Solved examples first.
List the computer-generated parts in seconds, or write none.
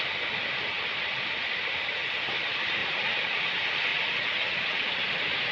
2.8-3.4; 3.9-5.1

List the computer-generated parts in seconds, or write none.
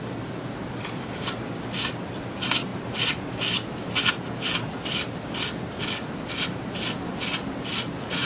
none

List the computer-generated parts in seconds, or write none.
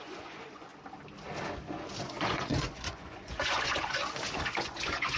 0.0-0.7; 2.0-4.0; 4.6-5.2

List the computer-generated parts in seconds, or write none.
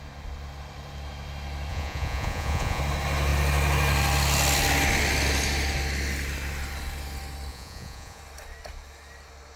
1.7-2.8; 7.5-8.2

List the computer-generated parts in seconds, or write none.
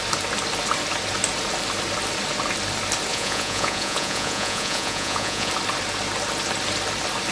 3.1-5.5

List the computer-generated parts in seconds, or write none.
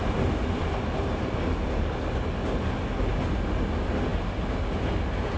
none